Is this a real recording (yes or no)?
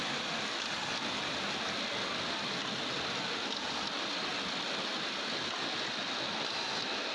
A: yes